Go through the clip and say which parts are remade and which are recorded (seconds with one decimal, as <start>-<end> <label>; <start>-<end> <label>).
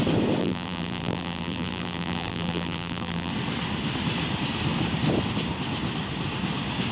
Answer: 0.0-0.4 recorded; 0.4-3.3 remade; 3.3-6.9 recorded